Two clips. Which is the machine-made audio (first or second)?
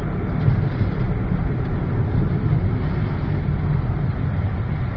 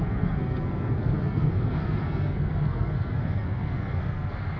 second